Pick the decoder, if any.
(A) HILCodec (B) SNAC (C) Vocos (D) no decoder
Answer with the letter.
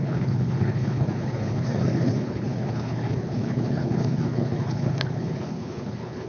A